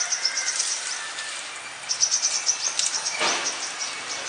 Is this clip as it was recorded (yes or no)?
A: no